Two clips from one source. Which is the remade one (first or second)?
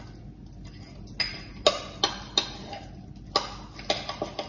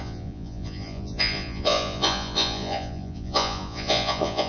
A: second